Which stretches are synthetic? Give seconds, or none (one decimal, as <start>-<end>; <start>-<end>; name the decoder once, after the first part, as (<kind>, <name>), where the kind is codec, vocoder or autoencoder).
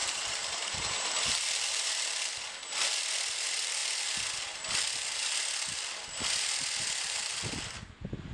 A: 0.0-2.3 (vocoder, BigVGAN v2)